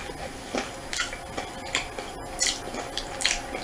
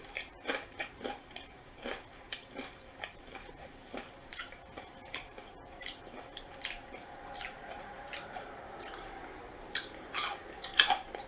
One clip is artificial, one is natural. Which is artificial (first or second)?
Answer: second